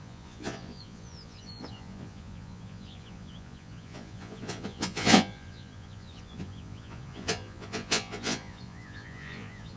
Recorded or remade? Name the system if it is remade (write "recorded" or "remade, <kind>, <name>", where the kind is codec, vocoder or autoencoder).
remade, vocoder, Vocos